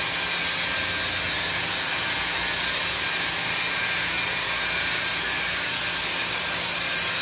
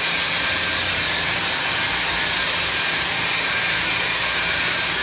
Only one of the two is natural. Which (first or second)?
first